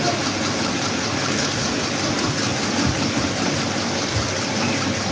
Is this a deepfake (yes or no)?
yes